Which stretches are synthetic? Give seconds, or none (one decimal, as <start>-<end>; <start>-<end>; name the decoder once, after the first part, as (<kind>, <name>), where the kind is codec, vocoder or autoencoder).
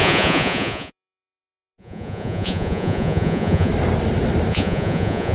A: 0.0-3.7 (vocoder, Vocos); 4.5-5.3